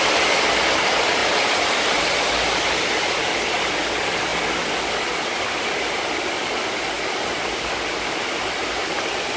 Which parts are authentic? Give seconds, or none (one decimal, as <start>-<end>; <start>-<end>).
0.0-1.2; 2.0-3.2; 3.7-9.4